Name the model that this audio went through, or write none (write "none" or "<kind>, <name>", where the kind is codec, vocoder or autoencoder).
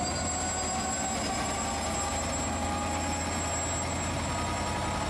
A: none